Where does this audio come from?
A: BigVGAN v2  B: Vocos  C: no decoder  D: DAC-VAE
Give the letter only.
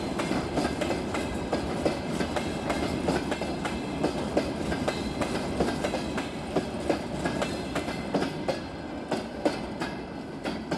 C